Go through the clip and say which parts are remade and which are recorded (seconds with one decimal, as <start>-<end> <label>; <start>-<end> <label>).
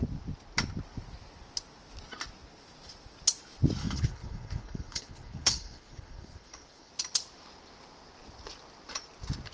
0.0-3.8 recorded; 3.8-6.9 remade; 6.9-9.5 recorded